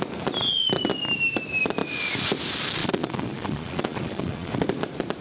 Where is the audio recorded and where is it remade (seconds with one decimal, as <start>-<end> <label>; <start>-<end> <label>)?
0.0-2.8 recorded; 2.8-4.5 remade; 4.5-5.2 recorded